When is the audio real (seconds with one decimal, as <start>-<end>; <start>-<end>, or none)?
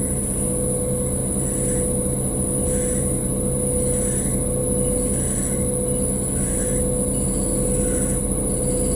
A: 0.0-8.9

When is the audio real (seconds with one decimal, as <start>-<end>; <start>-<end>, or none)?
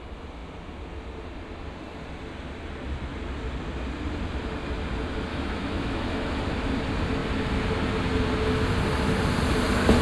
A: 0.0-5.3; 6.4-10.0